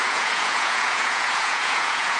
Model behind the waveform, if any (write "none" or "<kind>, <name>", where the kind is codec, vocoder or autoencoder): vocoder, Vocos